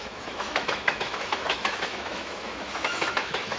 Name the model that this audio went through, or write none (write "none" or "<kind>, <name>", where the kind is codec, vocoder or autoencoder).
autoencoder, DAC-VAE